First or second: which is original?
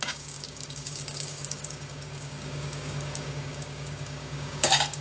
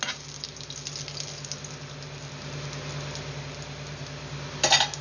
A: second